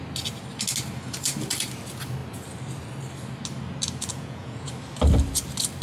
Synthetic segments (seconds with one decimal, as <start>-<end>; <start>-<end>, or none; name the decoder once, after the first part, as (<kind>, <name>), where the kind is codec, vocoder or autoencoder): 4.1-4.7 (vocoder, Vocos)